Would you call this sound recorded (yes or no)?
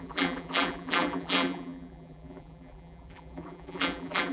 no